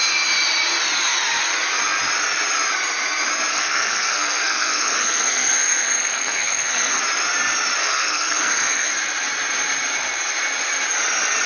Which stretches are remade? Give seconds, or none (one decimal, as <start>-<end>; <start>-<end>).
3.5-7.0; 7.8-8.9